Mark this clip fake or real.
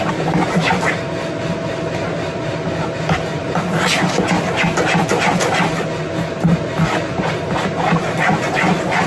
real